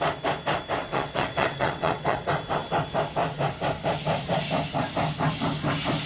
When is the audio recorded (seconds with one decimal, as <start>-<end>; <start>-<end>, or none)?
0.0-0.8; 2.3-6.1